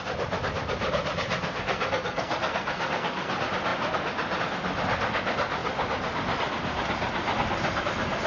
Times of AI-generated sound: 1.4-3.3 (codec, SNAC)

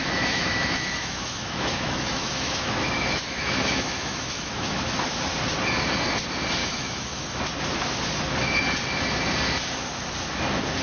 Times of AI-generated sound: 0.0-5.0 (autoencoder, DAC-VAE); 6.6-7.4

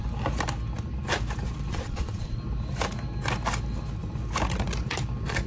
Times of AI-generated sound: 1.7-2.4 (vocoder, Vocos)

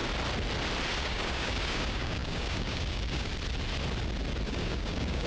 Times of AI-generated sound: 1.0-3.3 (codec, DAC); 4.5-5.3

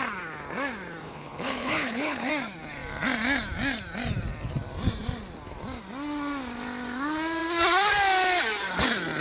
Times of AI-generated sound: 1.0-2.3 (codec, HILCodec)

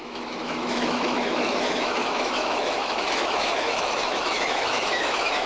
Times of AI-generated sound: 0.0-5.5 (autoencoder, DAC-VAE)

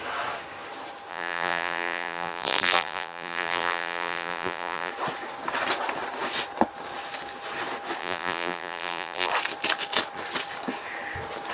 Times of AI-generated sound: 1.1-4.9 (vocoder, BigVGAN v2); 8.0-9.3

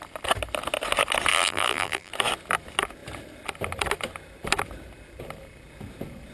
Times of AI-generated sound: 1.3-2.1 (vocoder, BigVGAN v2)